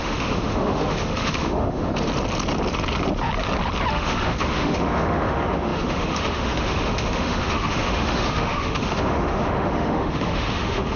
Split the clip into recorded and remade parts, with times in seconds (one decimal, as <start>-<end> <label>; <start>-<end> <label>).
0.0-1.9 remade; 1.9-3.9 recorded; 3.9-11.0 remade